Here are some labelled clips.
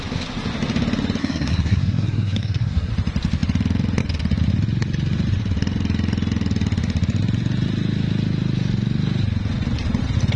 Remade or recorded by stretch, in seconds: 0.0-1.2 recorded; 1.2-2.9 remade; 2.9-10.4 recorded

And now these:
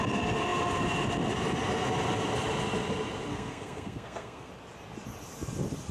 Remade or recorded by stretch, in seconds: 0.0-3.3 recorded; 3.3-4.5 remade; 4.5-5.9 recorded

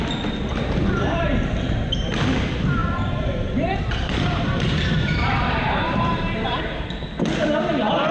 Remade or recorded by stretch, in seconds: 0.0-0.5 recorded; 0.5-2.1 remade; 2.1-2.8 recorded; 2.8-6.9 remade; 6.9-8.1 recorded

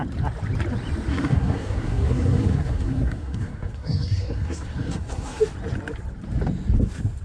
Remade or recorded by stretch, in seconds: 0.0-1.1 recorded; 1.1-5.4 remade; 5.4-7.2 recorded

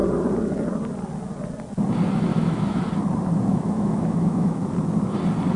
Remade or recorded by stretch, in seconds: 0.0-2.3 recorded; 2.3-2.8 remade; 2.8-3.5 recorded; 3.5-4.6 remade; 4.6-5.6 recorded

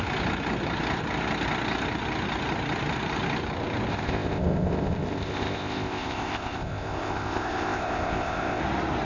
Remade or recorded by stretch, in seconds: 0.0-3.9 recorded; 3.9-8.6 remade; 8.6-9.0 recorded